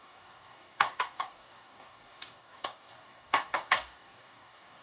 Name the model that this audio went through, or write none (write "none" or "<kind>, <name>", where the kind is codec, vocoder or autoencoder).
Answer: codec, DAC